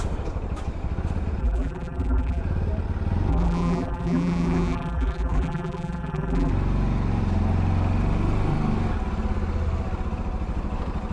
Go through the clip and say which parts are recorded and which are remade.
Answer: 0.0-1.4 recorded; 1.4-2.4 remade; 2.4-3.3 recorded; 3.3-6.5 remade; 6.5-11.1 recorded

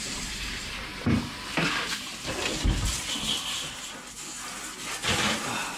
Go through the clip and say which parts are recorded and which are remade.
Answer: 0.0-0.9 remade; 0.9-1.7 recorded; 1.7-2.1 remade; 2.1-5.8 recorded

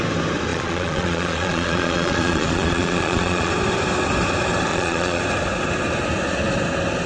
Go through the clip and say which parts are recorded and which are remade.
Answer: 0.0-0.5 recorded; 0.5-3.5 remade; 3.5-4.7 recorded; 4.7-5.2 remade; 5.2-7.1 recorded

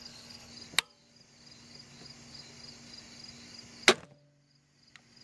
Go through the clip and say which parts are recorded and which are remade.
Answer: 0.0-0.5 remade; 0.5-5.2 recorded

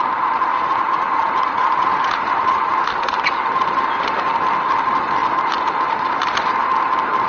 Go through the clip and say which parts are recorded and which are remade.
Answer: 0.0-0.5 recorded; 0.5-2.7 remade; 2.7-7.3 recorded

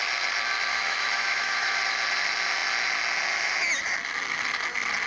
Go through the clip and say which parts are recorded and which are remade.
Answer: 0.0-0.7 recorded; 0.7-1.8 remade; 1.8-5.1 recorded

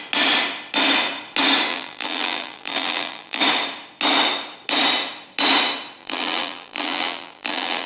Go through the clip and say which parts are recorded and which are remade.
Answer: 0.0-1.7 recorded; 1.7-3.4 remade; 3.4-6.0 recorded; 6.0-7.9 remade